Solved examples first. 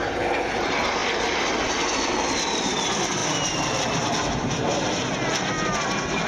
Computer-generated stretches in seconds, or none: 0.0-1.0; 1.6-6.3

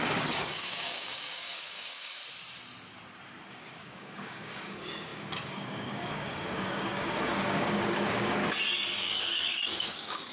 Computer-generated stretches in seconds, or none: 0.0-2.2; 3.5-8.4; 9.0-10.3

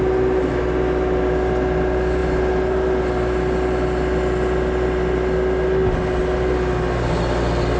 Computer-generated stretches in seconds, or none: none

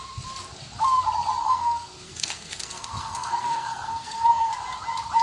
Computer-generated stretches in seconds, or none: 1.4-4.5

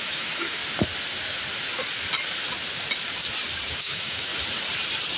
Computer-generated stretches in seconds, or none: 0.0-0.6; 3.7-4.3